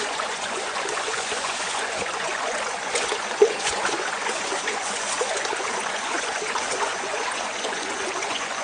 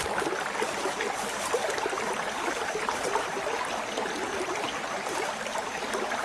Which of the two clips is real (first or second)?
second